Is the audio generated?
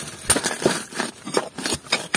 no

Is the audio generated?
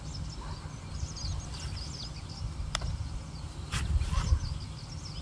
no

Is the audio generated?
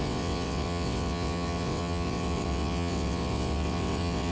yes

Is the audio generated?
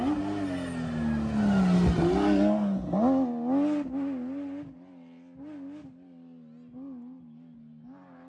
no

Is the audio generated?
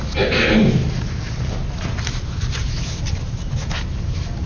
no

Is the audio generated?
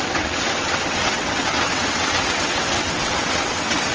yes